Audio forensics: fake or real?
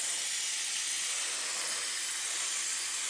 real